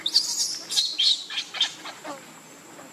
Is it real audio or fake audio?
real